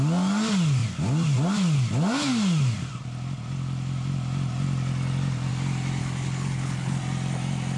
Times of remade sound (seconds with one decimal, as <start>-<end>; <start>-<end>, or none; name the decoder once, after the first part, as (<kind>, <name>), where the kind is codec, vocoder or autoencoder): 6.0-7.0 (codec, HILCodec)